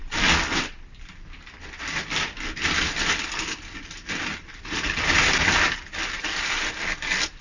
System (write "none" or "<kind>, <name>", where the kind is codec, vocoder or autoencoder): none